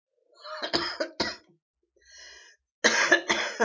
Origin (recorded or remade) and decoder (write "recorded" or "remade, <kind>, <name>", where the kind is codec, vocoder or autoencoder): recorded